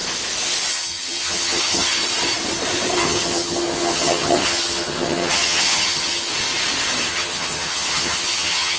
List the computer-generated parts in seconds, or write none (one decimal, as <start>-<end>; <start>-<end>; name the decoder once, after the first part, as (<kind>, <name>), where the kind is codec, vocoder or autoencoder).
0.7-2.0 (vocoder, HiFi-GAN); 3.0-6.3; 7.1-8.8

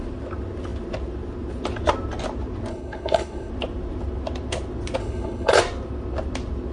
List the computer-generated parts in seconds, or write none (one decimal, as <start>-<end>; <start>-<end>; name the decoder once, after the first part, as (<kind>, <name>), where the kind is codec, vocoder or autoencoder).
2.7-3.5 (codec, HILCodec); 5.0-5.6

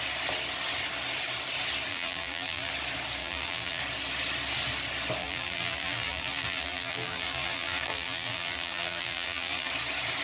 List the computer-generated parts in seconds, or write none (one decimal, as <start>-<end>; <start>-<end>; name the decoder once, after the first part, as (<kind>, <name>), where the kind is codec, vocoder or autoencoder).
1.9-2.7 (vocoder, BigVGAN v2); 3.2-3.8; 5.2-9.7

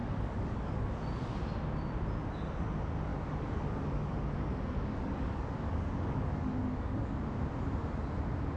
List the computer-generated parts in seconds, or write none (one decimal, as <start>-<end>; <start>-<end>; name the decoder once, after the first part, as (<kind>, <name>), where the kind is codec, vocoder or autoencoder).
0.0-0.9 (codec, DAC); 3.1-7.2

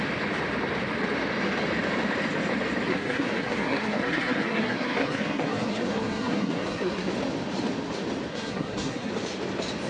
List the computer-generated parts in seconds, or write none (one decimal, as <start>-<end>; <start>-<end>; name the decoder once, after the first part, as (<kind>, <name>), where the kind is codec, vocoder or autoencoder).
2.9-7.1 (codec, SNAC); 8.3-9.1

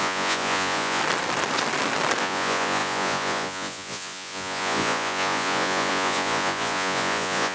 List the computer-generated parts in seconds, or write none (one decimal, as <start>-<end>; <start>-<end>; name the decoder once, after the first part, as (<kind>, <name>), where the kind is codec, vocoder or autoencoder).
0.0-1.0 (vocoder, Vocos); 2.2-7.5

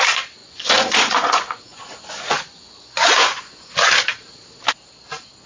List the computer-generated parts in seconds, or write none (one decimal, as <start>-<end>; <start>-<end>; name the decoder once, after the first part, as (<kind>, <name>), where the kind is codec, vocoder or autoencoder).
0.4-3.7 (vocoder, Vocos)

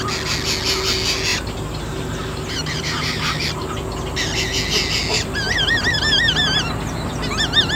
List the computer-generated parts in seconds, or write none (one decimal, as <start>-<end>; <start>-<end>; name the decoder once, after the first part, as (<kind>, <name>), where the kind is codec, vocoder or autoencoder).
1.3-3.3 (vocoder, BigVGAN v2); 5.1-5.8